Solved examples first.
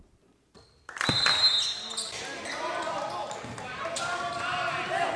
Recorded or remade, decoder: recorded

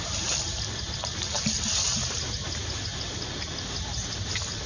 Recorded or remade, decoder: recorded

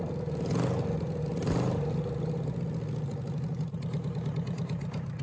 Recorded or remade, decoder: recorded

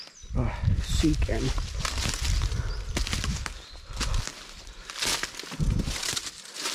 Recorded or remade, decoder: recorded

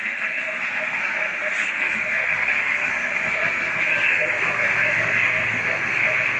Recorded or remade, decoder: remade, codec, SNAC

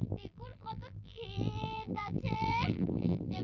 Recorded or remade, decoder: remade, vocoder, BigVGAN v2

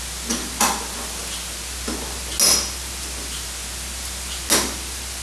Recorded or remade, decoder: recorded